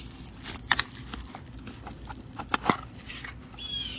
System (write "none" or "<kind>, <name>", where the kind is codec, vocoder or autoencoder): none